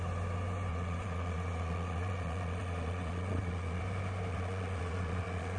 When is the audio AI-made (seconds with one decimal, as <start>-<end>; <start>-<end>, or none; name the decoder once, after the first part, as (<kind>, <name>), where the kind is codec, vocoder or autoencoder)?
0.7-3.8 (vocoder, Vocos); 4.3-5.6